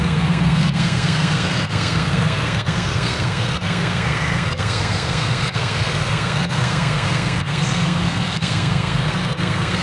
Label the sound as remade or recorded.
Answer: remade